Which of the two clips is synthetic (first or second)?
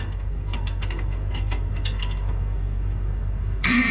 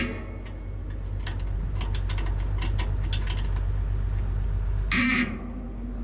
first